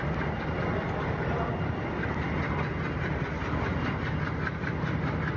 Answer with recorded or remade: recorded